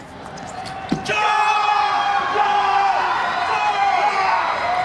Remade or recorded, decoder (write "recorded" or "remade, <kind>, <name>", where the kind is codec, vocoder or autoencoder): recorded